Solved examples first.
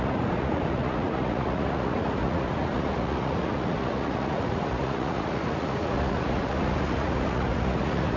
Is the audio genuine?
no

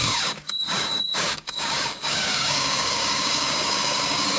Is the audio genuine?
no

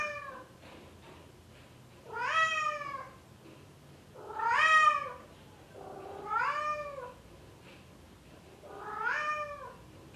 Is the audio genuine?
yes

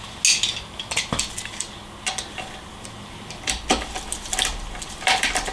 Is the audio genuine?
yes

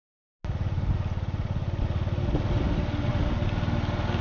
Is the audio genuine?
yes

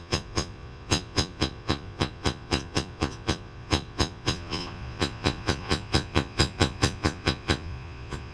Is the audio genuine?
no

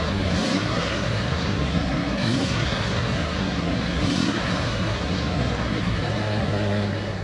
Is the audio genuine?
no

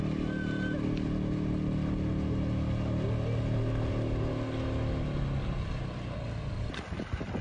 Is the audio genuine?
yes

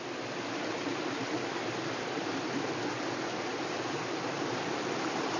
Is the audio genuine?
yes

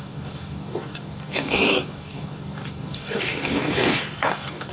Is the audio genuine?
no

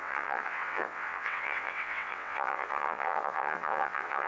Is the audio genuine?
no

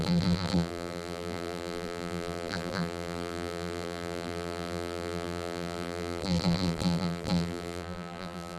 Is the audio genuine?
no